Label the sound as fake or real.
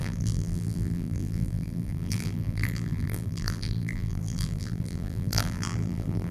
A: fake